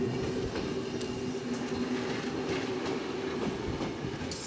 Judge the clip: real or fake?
real